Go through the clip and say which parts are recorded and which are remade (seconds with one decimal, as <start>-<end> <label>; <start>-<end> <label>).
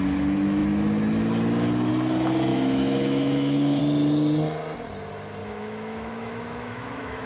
0.0-2.5 recorded; 2.5-3.8 remade; 3.8-5.4 recorded; 5.4-7.3 remade